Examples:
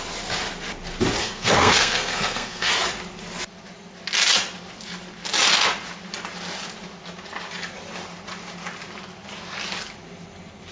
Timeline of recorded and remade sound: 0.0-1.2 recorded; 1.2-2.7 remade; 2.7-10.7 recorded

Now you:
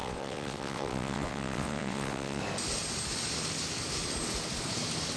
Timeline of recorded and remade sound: 0.0-2.4 remade; 2.4-5.2 recorded